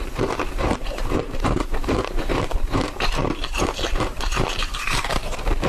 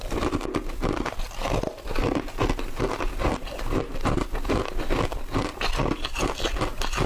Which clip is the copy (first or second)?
first